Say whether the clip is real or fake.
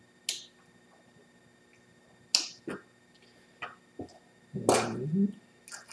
real